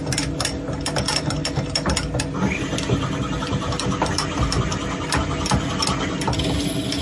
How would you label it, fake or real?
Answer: real